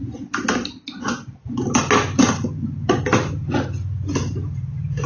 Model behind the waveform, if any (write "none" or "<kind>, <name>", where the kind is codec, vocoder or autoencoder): none